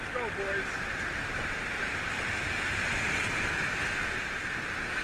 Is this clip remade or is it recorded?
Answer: recorded